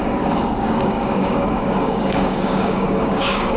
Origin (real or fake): fake